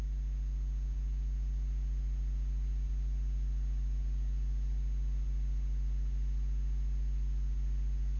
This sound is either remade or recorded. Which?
recorded